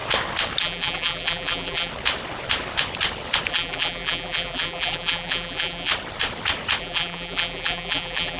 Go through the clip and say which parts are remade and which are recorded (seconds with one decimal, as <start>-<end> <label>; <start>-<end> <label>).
0.0-0.6 recorded; 0.6-1.9 remade; 1.9-3.5 recorded; 3.5-5.9 remade; 5.9-6.8 recorded; 6.8-8.4 remade